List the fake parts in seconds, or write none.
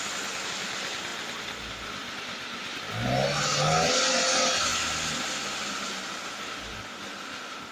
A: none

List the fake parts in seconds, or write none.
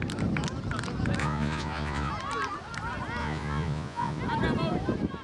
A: 1.2-2.1 (vocoder, Vocos); 3.2-4.2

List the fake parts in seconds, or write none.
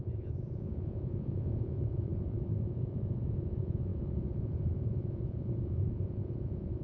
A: 0.0-6.8 (vocoder, Vocos)